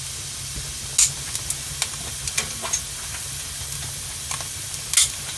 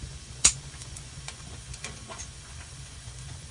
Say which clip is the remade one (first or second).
second